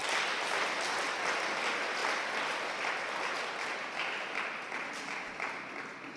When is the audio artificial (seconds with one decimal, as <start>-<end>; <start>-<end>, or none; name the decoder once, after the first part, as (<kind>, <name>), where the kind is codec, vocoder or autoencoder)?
none